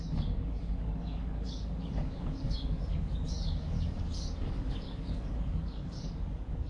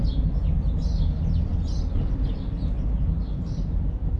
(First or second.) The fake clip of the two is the first